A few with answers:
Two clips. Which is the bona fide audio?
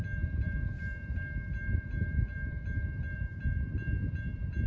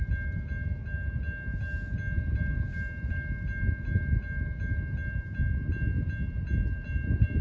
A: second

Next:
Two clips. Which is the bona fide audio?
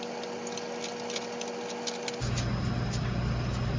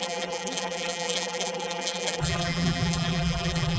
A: first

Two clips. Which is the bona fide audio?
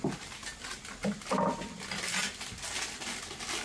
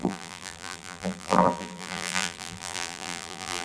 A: first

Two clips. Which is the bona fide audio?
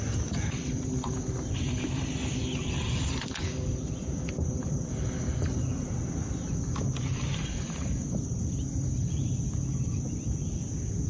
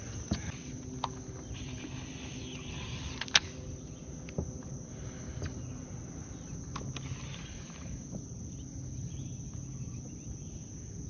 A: second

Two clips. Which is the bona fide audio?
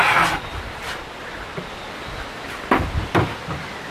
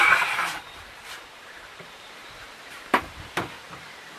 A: first